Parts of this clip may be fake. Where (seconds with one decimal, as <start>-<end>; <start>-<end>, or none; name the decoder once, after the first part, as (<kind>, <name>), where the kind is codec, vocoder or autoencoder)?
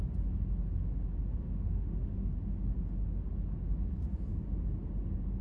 1.3-2.3 (autoencoder, DAC-VAE)